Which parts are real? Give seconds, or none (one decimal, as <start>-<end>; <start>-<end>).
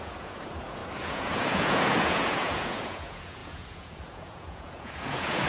none